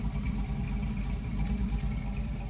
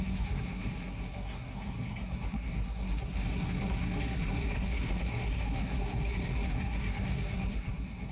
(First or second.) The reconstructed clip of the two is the second